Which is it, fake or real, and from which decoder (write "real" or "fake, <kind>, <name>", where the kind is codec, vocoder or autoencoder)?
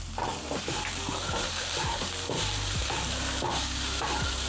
fake, vocoder, BigVGAN v2